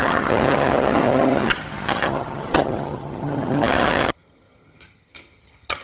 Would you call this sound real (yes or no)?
no